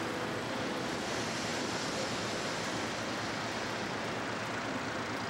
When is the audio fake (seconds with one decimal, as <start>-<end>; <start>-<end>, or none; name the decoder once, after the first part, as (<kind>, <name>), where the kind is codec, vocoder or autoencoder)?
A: none